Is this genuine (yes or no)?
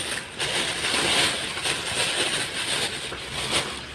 yes